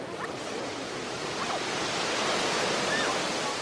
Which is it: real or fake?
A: real